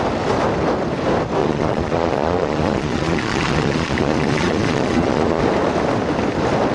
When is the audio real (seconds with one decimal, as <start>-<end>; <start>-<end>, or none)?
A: 0.0-1.4; 5.4-6.7

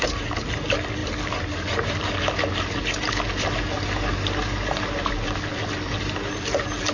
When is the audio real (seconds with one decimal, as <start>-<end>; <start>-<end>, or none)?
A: 0.0-6.9

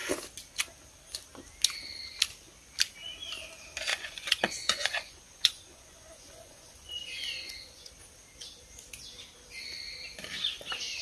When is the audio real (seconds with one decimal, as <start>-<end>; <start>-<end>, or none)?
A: 0.0-3.9; 7.9-11.0